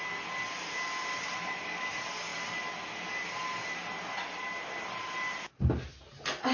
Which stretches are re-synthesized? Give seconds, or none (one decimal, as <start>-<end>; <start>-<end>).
none